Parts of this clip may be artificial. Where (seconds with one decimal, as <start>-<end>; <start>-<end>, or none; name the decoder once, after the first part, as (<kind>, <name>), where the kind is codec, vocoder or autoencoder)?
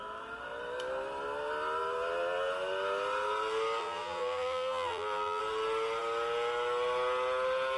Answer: 3.8-5.4 (vocoder, BigVGAN v2)